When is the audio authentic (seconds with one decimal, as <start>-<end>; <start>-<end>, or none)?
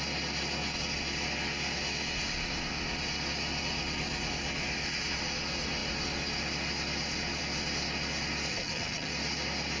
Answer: 0.0-8.5; 9.1-9.8